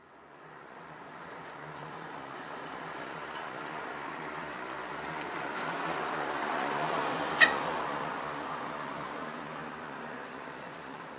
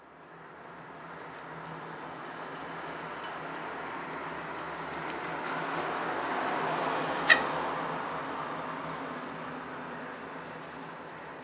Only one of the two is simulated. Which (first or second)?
first